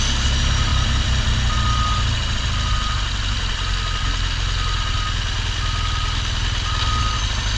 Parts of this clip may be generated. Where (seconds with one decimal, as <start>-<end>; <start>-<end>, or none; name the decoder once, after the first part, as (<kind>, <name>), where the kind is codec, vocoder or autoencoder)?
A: none